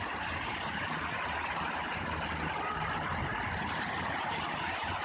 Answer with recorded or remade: remade